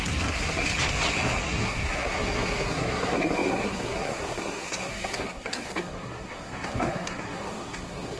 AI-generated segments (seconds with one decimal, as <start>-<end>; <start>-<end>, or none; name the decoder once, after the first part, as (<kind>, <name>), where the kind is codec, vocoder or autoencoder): 0.0-0.7 (codec, SNAC); 1.4-8.2